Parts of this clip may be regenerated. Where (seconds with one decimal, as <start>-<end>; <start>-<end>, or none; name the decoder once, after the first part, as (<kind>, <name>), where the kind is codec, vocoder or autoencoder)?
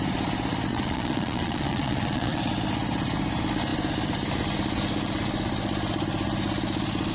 0.7-2.4 (vocoder, Vocos)